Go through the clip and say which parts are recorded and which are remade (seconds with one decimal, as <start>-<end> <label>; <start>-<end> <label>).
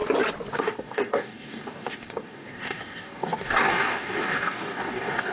0.0-0.5 recorded; 0.5-5.3 remade